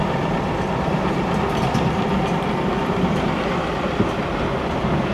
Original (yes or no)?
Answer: no